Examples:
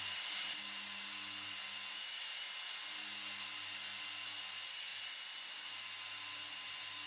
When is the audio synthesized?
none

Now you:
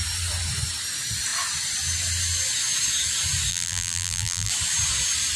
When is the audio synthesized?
3.5-4.5

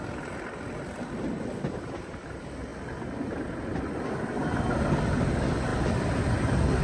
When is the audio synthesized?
5.7-6.8

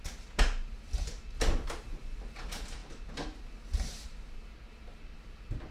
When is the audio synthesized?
none

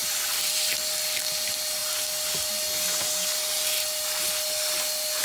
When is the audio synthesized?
none

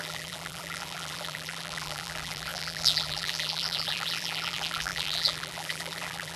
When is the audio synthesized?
0.0-6.4